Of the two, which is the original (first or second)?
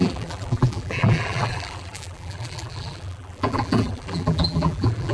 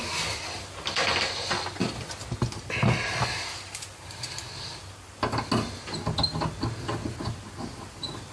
second